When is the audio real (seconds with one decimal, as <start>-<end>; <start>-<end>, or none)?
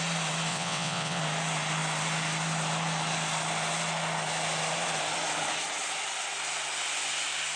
0.0-0.5; 1.2-7.6